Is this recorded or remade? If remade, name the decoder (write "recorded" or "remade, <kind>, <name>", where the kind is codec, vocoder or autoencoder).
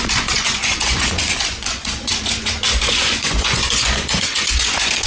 remade, vocoder, Vocos